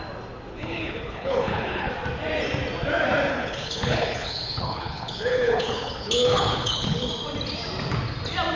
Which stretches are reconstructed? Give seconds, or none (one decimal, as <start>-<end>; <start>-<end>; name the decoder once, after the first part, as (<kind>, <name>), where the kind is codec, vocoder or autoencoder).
0.5-1.9 (codec, HILCodec); 3.3-7.1

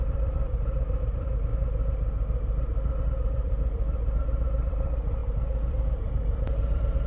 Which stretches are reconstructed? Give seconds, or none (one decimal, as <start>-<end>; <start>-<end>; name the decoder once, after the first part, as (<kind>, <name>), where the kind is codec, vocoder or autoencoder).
0.0-1.5 (vocoder, BigVGAN v2); 3.0-5.2; 5.7-7.1